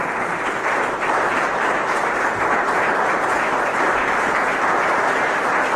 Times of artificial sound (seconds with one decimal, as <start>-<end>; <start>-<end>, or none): 0.0-5.8